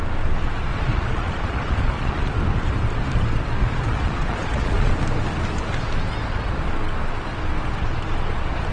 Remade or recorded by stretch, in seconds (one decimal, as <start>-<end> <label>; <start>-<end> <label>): 0.0-0.7 recorded; 0.7-2.3 remade; 2.3-3.6 recorded; 3.6-4.9 remade; 4.9-8.7 recorded